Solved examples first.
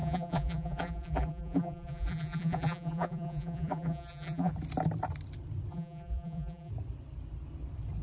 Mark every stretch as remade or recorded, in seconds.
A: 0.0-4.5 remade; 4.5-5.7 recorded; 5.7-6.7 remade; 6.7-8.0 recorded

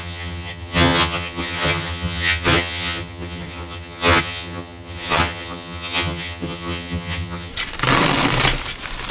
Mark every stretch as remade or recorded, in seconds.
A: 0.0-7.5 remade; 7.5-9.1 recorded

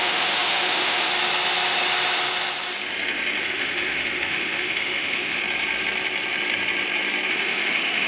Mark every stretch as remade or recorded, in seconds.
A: 0.0-1.1 remade; 1.1-3.4 recorded; 3.4-5.4 remade; 5.4-7.3 recorded; 7.3-8.1 remade